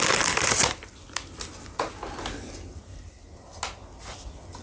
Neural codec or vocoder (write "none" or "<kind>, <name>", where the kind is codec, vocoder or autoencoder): none